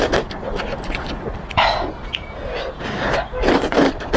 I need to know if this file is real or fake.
real